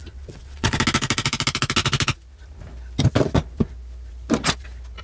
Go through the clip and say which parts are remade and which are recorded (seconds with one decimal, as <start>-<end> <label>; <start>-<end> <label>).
0.0-0.8 remade; 0.8-5.0 recorded